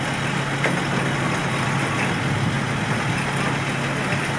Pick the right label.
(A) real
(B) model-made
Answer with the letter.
A